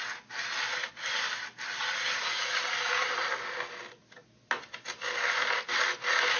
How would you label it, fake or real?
real